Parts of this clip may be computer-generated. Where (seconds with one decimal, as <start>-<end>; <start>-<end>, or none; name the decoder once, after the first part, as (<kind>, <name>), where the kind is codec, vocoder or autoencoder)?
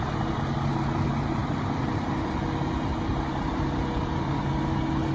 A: 1.4-2.2 (vocoder, BigVGAN v2)